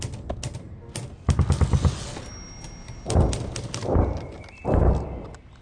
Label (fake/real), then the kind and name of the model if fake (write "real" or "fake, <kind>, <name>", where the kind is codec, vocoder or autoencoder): real